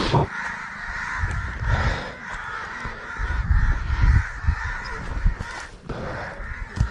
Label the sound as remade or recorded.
recorded